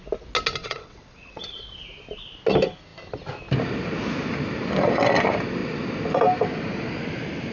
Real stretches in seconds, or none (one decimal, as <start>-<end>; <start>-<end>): 0.0-0.6; 1.4-7.5